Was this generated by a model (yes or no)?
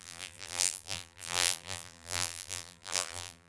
yes